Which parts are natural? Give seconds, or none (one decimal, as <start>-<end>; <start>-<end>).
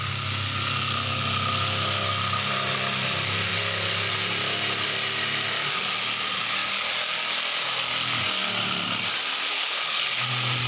0.0-9.5; 10.2-10.7